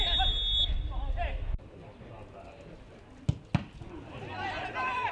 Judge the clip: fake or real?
real